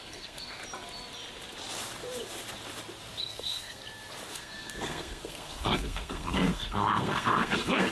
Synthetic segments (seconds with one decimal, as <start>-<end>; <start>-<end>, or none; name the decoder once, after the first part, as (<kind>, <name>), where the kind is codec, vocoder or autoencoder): 0.0-0.6 (codec, SNAC); 3.2-3.8; 4.3-7.9